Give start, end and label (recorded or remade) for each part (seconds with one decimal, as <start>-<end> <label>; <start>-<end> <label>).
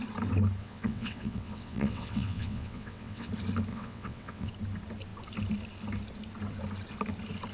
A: 0.0-0.6 recorded; 0.6-3.3 remade; 3.3-3.7 recorded; 3.7-4.5 remade; 4.5-7.5 recorded